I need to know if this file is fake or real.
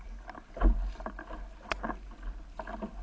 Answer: real